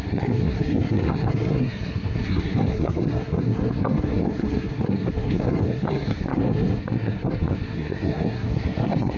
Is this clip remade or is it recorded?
remade